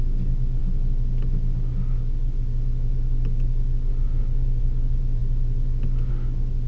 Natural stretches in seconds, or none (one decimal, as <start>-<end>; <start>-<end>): 0.0-6.7